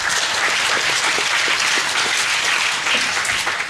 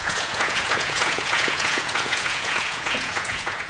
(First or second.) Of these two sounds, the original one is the first